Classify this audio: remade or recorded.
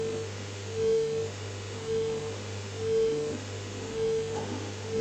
remade